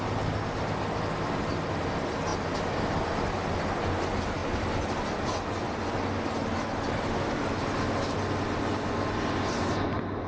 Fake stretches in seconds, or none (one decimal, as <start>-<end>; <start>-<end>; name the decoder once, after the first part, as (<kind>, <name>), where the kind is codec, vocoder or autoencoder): none